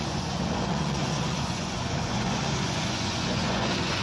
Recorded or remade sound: remade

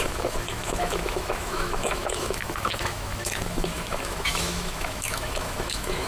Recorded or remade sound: remade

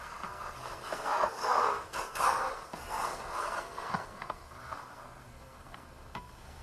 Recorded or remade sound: remade